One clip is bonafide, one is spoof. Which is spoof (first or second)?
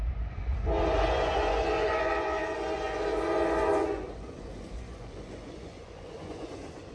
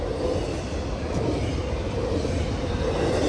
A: first